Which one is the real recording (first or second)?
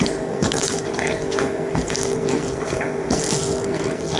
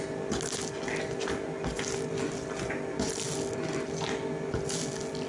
second